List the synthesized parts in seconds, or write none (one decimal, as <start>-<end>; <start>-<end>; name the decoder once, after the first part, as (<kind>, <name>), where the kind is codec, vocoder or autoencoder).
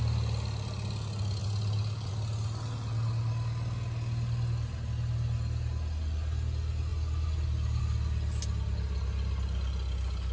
none